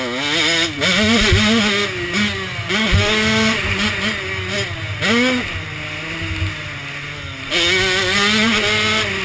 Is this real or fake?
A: real